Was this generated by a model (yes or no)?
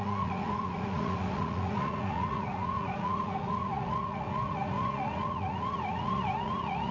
yes